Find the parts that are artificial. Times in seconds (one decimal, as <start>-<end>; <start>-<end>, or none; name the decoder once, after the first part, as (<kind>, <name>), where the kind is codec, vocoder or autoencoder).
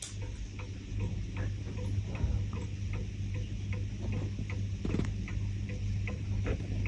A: none